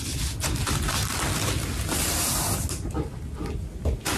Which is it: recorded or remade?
recorded